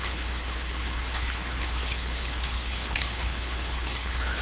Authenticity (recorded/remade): remade